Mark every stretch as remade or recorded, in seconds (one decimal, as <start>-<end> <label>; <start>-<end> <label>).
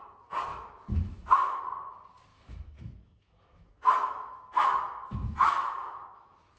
0.0-0.5 recorded; 0.5-1.6 remade; 1.6-2.3 recorded; 2.3-6.6 remade